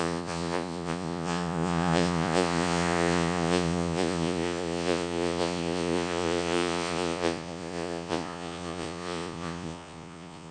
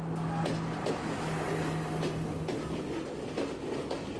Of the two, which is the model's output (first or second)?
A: first